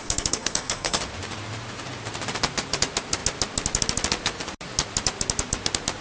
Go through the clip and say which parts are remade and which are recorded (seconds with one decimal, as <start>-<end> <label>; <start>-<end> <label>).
0.0-1.0 remade; 1.0-6.0 recorded